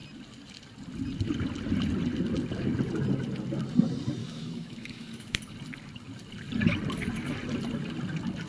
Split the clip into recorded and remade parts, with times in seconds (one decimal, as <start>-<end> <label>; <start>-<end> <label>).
0.0-4.2 recorded; 4.2-5.4 remade; 5.4-8.5 recorded